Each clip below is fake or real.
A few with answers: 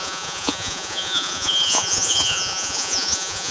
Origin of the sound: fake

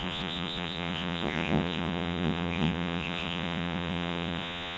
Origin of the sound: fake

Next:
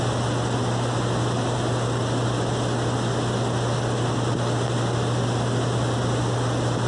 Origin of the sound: real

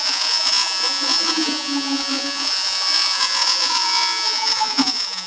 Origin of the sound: fake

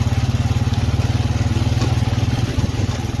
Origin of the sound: real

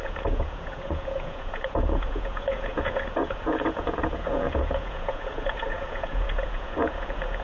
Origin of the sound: fake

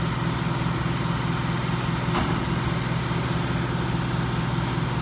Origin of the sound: real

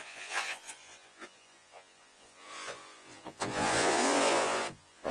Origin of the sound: fake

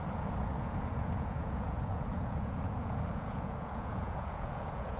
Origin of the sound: fake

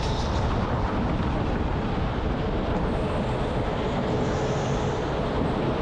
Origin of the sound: real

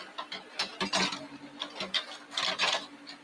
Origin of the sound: real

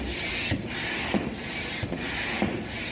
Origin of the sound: real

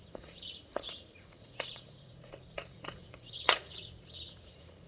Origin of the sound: fake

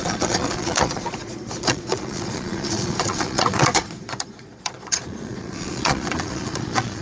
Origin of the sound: fake